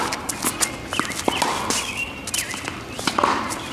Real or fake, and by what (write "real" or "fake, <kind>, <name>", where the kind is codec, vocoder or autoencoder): real